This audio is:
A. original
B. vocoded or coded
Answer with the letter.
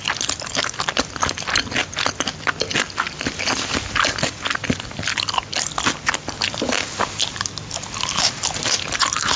A